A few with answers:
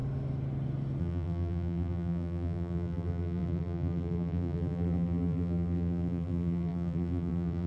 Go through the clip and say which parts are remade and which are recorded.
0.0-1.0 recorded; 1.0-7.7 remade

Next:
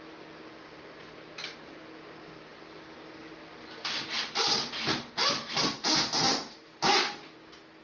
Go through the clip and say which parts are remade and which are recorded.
0.0-2.5 recorded; 2.5-4.7 remade; 4.7-5.2 recorded; 5.2-6.5 remade; 6.5-7.8 recorded

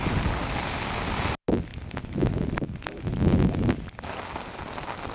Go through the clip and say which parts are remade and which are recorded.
0.0-5.1 recorded

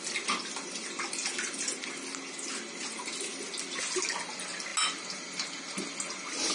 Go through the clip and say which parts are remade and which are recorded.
0.0-6.5 recorded

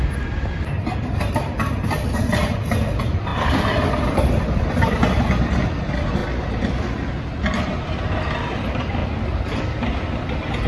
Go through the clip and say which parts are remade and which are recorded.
0.0-10.7 recorded

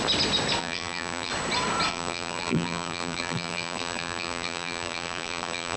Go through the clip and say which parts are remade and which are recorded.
0.0-0.6 recorded; 0.6-1.3 remade; 1.3-1.9 recorded; 1.9-5.8 remade

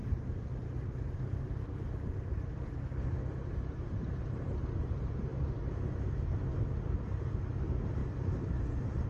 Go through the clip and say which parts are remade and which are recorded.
0.0-0.5 remade; 0.5-1.4 recorded; 1.4-2.5 remade; 2.5-3.7 recorded; 3.7-5.3 remade; 5.3-7.2 recorded; 7.2-8.0 remade; 8.0-8.6 recorded; 8.6-9.1 remade

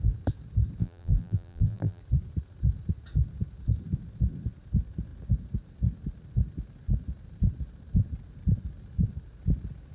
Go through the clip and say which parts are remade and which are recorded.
0.0-0.8 recorded; 0.8-2.0 remade; 2.0-9.9 recorded